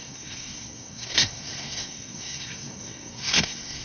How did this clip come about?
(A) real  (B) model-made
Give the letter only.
B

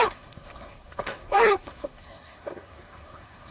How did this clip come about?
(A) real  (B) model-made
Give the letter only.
B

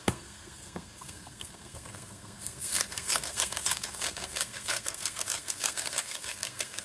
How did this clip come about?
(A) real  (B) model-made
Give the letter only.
B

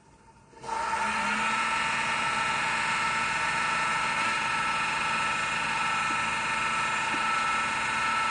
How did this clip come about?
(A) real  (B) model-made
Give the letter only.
A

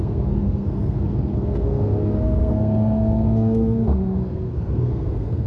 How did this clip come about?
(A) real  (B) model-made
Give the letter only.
B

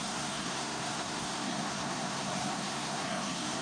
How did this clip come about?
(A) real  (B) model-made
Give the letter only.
B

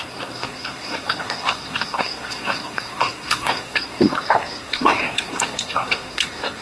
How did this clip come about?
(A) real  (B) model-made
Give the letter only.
B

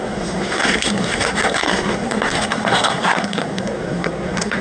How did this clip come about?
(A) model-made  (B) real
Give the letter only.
A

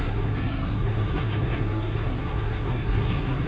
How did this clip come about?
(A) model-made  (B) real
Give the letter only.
A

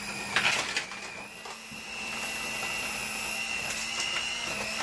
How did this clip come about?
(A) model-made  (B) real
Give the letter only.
B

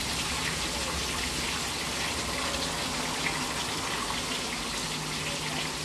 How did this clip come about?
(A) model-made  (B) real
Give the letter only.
B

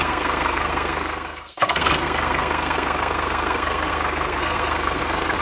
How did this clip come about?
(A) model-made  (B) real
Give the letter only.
A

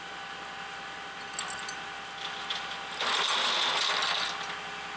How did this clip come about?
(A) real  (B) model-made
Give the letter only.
A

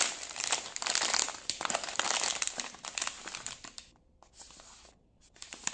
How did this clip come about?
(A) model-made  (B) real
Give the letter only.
B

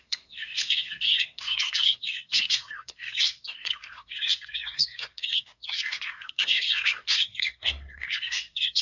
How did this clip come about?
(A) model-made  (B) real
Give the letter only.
A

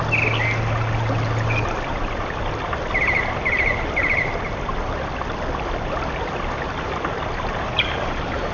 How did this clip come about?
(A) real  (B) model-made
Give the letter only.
A